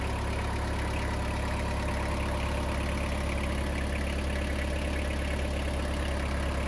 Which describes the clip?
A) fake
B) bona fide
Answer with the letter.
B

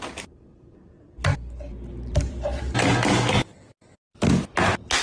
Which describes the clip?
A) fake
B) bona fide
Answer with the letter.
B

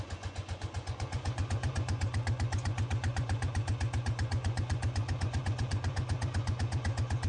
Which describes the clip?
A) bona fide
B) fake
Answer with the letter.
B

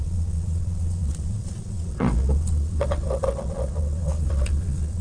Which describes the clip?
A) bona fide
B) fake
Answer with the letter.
B